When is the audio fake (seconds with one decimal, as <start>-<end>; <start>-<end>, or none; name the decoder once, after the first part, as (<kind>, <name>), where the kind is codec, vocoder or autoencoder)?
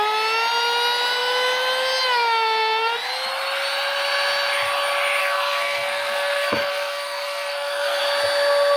5.2-8.0 (codec, SNAC)